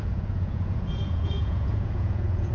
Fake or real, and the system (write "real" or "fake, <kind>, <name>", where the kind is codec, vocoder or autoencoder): fake, vocoder, Vocos